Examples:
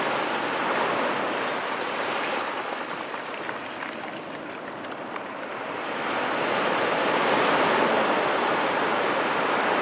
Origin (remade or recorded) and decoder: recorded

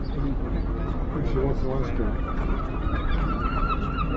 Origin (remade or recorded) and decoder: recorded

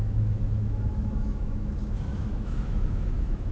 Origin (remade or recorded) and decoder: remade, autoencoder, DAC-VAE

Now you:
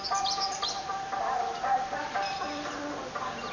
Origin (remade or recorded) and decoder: recorded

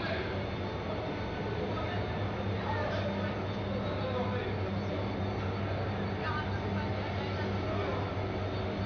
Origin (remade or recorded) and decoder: recorded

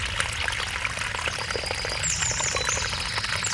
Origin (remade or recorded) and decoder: recorded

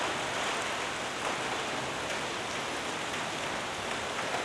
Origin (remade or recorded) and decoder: recorded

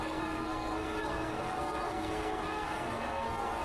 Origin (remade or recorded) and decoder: remade, codec, SNAC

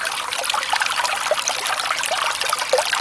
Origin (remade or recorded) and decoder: recorded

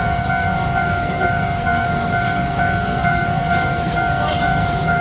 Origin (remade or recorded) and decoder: remade, codec, SNAC